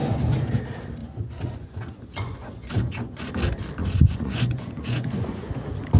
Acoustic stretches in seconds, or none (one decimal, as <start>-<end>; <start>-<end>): 0.6-1.0; 3.3-3.8; 5.5-6.0